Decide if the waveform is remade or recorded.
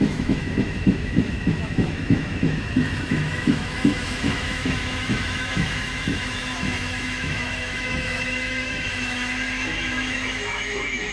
remade